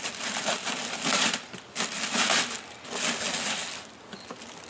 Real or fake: real